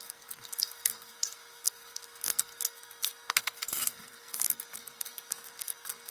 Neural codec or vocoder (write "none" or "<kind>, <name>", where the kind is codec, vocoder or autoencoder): codec, SNAC